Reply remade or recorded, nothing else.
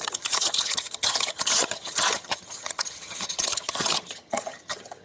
remade